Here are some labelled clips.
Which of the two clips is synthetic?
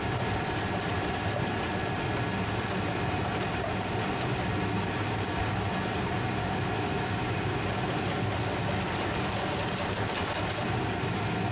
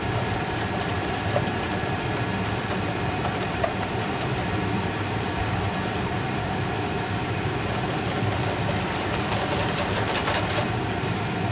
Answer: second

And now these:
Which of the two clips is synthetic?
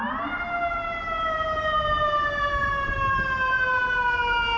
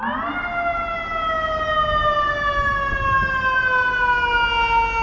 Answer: first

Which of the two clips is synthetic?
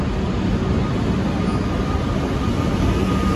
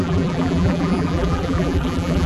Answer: second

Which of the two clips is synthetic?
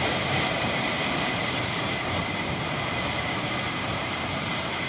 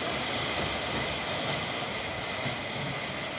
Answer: first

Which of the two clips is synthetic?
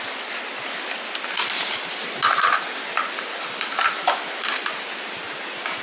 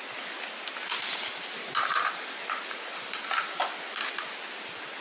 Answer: first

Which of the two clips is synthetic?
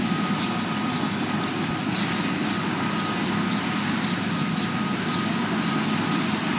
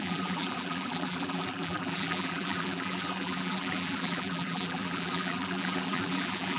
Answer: second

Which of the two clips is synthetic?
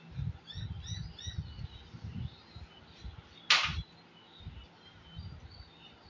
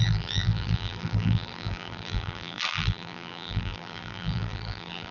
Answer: second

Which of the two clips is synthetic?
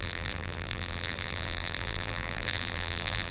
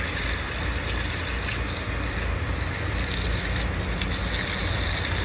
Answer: first